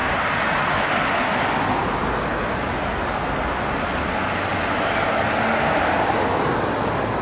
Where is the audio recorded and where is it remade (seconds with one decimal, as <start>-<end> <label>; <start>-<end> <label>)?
0.0-0.7 remade; 0.7-4.5 recorded; 4.5-5.1 remade; 5.1-7.2 recorded